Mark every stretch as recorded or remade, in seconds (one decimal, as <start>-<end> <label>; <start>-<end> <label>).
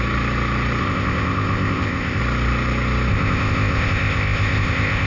0.0-0.8 recorded; 0.8-2.2 remade; 2.2-3.1 recorded; 3.1-5.1 remade